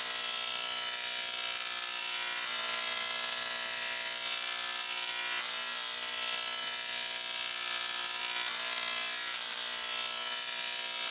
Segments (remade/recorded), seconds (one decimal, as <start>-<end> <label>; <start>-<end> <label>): 0.0-11.1 recorded